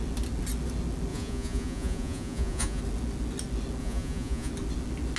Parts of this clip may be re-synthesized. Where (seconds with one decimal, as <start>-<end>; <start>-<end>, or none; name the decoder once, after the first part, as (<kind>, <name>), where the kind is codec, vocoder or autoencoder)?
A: 1.1-2.8 (vocoder, Vocos); 3.8-4.5